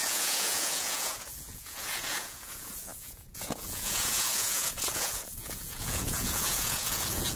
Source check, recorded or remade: remade